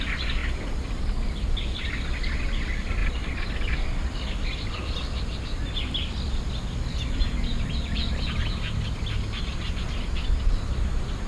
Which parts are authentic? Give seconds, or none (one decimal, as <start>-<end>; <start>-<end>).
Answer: 0.0-0.4; 1.9-3.0; 8.1-11.3